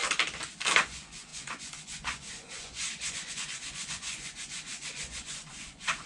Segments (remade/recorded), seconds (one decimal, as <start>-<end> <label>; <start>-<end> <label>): 0.0-0.9 recorded; 0.9-6.1 remade